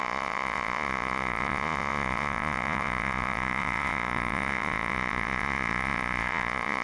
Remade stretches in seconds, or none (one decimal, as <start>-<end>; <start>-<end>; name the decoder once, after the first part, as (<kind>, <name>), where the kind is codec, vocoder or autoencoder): 0.0-6.8 (vocoder, Vocos)